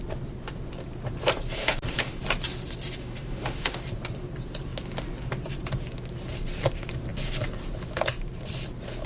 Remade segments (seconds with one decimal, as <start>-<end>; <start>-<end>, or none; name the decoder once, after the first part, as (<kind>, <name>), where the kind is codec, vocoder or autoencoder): 1.6-2.2 (autoencoder, DAC-VAE); 3.0-3.8